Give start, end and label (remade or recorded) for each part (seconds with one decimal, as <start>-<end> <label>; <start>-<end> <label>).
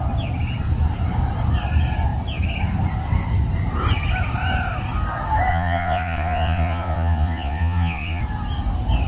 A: 0.0-5.5 recorded; 5.5-8.2 remade; 8.2-9.1 recorded